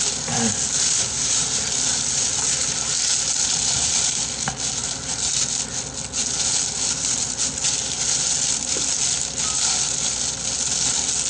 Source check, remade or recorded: recorded